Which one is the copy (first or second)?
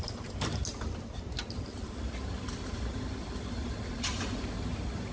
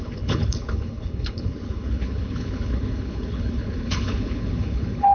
second